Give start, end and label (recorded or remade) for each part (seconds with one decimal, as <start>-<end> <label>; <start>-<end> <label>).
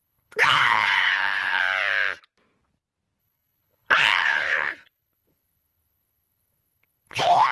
0.0-1.6 remade; 1.6-3.2 recorded; 3.2-7.5 remade